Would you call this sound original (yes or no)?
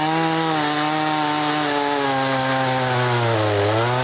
yes